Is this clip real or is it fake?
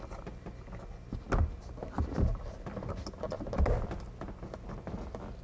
real